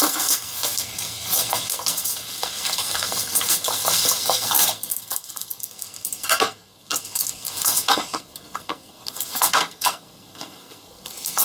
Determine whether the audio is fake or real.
fake